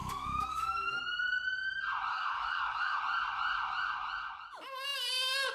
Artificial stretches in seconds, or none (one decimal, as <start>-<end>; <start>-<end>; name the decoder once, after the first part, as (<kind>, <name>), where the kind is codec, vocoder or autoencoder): 0.0-1.0 (codec, DAC); 2.1-3.0